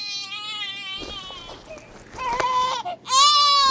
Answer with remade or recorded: recorded